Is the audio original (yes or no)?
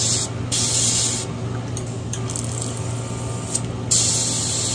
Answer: yes